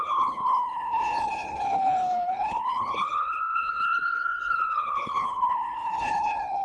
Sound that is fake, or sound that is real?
fake